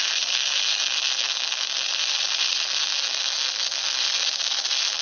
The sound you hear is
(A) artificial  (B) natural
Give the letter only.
B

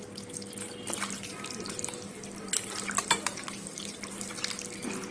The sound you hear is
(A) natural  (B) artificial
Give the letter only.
A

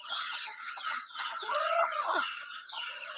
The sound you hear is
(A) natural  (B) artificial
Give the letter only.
B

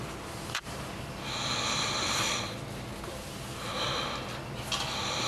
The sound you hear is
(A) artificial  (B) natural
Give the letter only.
A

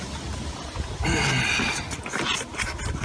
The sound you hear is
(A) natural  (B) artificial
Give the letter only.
A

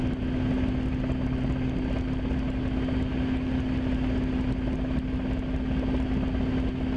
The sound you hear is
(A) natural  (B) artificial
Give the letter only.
A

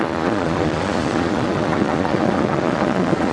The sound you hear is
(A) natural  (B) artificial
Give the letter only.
B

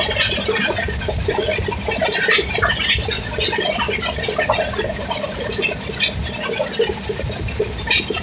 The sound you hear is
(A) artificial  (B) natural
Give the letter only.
B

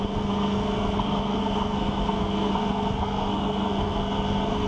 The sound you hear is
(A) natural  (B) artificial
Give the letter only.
B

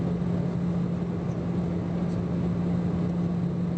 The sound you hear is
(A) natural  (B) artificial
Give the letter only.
A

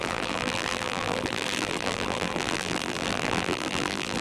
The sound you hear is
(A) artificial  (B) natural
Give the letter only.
A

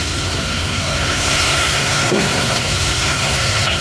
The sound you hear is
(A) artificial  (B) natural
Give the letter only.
A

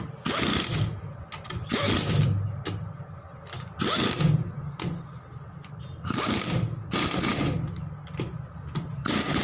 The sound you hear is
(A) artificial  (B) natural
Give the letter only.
A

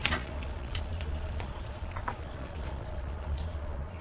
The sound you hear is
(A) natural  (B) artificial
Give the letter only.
B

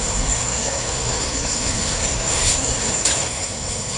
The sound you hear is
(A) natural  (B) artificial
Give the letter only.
B